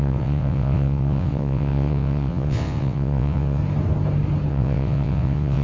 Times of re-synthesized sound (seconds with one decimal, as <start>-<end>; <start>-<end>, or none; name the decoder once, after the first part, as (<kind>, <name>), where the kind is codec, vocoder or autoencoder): 0.0-3.6 (vocoder, WaveNeXt); 4.5-5.6

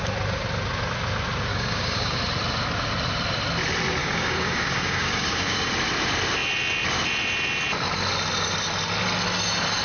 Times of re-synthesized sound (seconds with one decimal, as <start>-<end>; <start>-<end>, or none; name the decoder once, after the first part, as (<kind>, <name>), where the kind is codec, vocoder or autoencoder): 1.5-2.2 (codec, DAC); 4.0-5.7

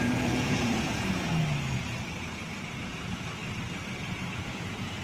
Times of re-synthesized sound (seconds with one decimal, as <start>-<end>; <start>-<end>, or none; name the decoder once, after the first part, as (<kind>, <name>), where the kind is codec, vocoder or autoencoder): 0.0-1.3 (vocoder, Vocos); 2.8-3.4; 4.3-5.0

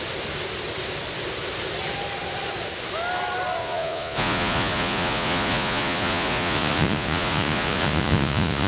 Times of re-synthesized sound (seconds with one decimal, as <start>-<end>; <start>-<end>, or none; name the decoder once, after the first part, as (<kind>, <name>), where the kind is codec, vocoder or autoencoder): 3.6-8.7 (vocoder, Vocos)

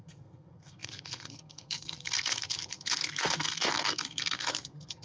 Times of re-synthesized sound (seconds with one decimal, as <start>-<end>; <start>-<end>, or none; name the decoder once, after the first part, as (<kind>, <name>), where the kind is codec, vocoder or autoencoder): 0.0-5.0 (codec, SNAC)

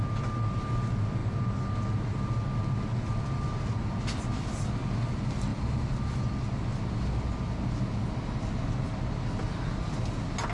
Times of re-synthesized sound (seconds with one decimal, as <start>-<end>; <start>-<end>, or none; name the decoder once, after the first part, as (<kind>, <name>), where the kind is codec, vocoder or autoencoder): none

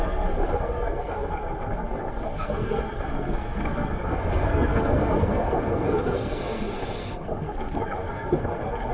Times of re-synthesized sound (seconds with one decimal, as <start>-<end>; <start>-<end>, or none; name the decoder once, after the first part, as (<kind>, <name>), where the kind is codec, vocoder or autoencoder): 0.0-8.9 (codec, SNAC)